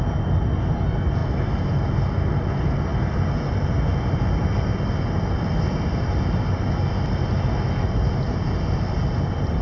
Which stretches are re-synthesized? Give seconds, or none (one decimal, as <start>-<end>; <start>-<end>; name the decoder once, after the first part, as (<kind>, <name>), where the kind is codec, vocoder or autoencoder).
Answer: none